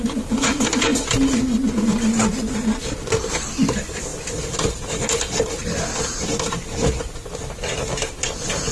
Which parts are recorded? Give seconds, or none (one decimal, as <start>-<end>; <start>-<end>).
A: 0.0-8.7